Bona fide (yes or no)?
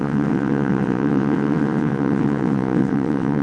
no